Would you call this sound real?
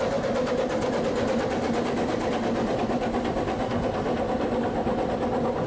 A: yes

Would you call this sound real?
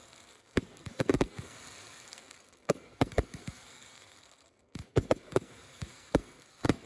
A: no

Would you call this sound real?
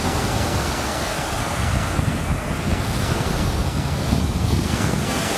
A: no